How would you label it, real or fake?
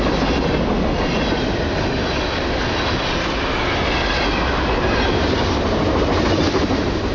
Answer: real